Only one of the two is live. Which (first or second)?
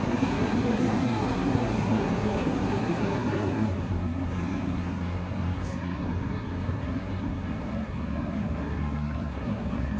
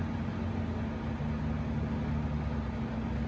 second